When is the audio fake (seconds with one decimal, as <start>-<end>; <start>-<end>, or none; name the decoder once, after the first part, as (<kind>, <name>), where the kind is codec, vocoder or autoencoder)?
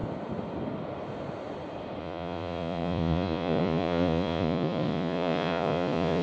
2.0-6.2 (vocoder, Vocos)